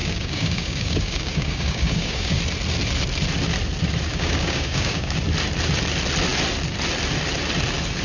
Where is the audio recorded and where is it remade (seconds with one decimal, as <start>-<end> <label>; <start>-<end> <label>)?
0.0-2.4 remade; 2.4-4.1 recorded; 4.1-5.2 remade; 5.2-8.0 recorded